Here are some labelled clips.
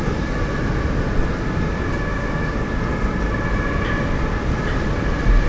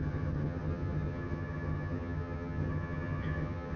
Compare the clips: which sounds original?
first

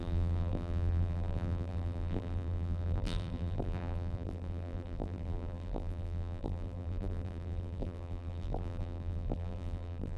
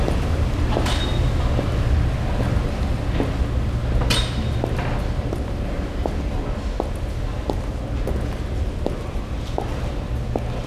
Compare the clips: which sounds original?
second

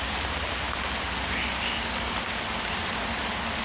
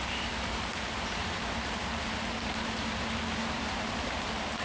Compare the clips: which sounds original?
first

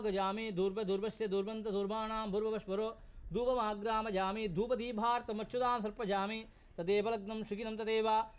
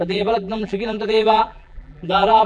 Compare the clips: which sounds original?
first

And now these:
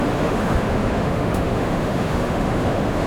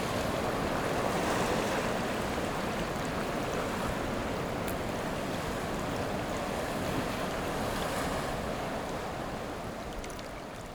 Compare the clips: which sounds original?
second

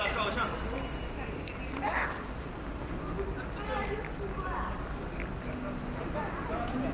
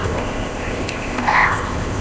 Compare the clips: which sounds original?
first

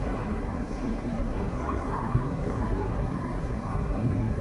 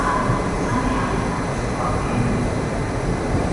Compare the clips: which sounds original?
second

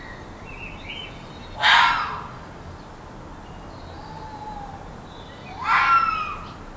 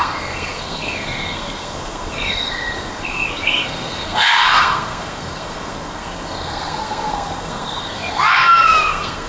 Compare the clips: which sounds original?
first